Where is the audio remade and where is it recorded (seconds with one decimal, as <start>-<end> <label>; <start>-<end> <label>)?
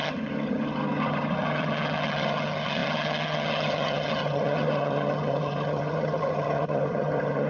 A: 0.0-7.5 remade